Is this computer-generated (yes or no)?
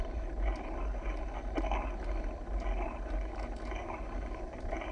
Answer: no